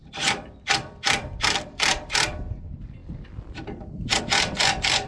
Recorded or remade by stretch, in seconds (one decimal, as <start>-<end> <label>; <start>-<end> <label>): 0.0-5.1 remade